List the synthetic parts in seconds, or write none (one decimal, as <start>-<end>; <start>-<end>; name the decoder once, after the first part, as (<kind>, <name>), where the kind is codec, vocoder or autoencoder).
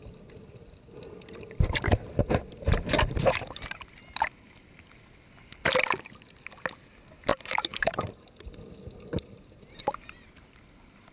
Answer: 7.3-8.1 (vocoder, BigVGAN v2); 9.1-9.8